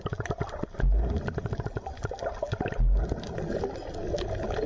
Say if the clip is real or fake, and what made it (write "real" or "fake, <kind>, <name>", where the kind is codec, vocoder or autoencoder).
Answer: real